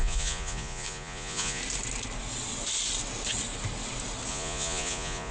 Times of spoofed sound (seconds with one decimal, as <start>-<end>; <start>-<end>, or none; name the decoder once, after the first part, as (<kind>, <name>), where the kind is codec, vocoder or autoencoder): 0.0-1.6 (vocoder, Vocos); 4.3-5.3